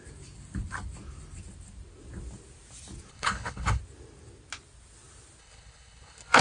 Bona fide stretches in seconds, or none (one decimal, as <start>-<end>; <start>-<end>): 0.0-3.1; 3.8-5.4